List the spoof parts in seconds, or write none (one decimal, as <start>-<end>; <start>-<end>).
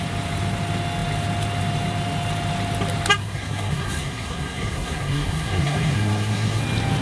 3.2-6.6